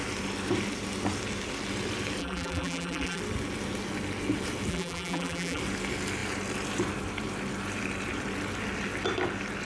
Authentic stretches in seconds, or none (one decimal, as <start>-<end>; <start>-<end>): 0.0-2.2; 3.2-4.7; 5.6-9.6